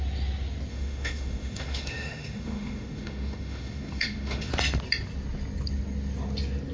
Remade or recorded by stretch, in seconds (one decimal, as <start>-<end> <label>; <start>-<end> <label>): 0.0-0.7 recorded; 0.7-4.5 remade; 4.5-6.7 recorded